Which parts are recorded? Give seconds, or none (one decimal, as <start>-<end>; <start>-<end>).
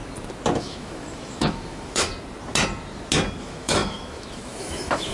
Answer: 0.0-0.6; 2.1-3.4